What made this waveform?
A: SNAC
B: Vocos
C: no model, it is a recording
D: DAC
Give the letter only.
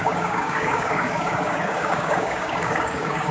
D